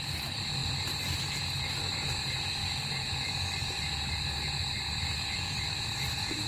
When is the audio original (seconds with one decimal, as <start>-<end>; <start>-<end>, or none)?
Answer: 0.0-6.5